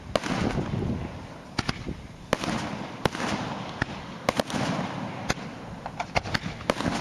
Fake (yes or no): no